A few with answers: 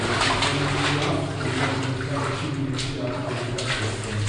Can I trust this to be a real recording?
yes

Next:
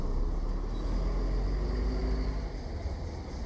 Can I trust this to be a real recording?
yes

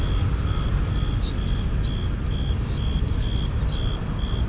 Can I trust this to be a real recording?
yes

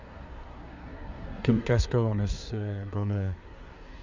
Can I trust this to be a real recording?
no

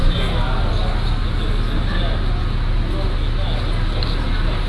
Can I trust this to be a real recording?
yes